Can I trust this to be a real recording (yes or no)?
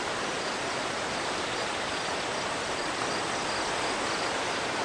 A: yes